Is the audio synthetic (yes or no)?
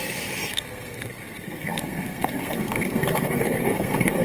yes